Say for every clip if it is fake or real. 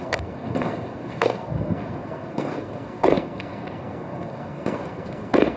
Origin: fake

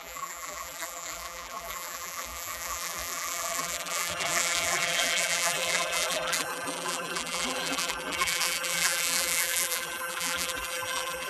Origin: fake